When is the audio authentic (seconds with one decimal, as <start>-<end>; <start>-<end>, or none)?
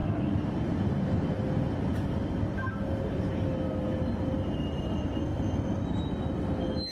0.0-5.3; 6.0-6.9